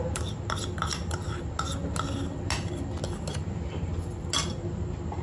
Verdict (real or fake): real